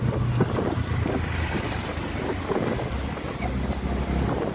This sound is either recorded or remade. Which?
recorded